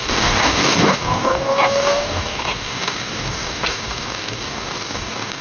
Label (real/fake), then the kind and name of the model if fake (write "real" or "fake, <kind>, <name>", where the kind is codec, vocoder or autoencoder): fake, codec, DAC